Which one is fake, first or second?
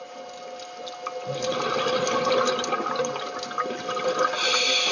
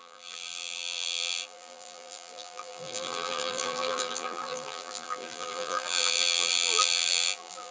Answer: second